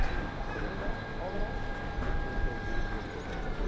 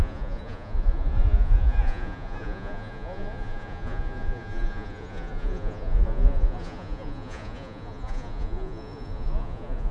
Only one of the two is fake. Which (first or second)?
second